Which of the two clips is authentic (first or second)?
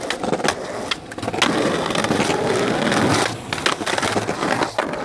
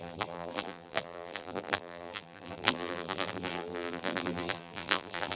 first